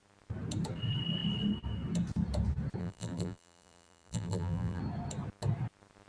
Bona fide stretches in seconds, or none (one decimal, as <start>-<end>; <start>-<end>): 0.0-2.8; 4.8-6.1